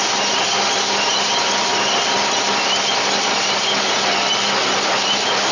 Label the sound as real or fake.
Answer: real